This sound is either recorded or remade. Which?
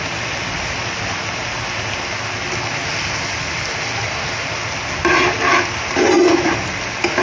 recorded